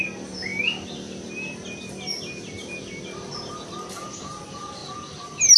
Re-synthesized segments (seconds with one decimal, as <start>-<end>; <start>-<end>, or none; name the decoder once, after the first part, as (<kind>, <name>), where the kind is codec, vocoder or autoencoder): none